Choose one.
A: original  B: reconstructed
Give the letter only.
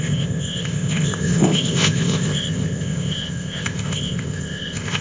B